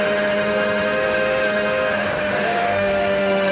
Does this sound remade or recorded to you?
remade